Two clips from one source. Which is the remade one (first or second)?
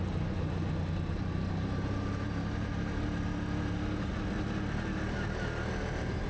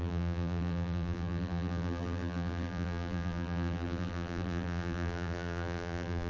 second